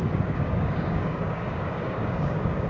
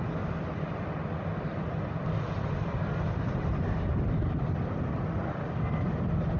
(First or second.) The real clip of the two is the second